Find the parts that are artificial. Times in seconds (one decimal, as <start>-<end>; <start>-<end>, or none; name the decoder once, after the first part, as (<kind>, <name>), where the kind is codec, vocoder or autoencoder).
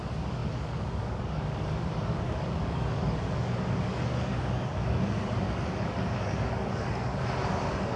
0.0-8.0 (codec, DAC)